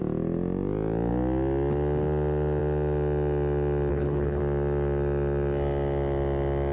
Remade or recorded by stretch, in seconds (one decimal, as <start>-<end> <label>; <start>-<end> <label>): 0.0-3.9 recorded; 3.9-4.4 remade; 4.4-6.7 recorded